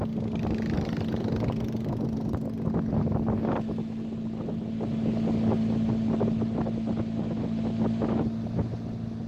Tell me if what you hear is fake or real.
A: real